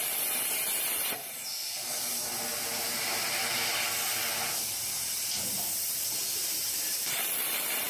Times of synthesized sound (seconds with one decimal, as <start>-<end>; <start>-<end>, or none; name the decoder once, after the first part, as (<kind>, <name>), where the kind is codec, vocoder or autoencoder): 6.2-7.3 (vocoder, BigVGAN v2)